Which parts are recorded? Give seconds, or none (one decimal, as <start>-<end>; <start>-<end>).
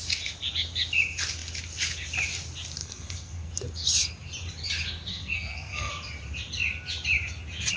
0.0-2.8; 3.5-5.1; 5.9-7.8